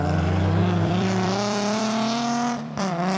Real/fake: fake